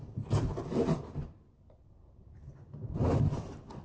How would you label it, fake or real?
real